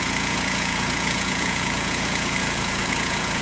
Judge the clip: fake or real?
fake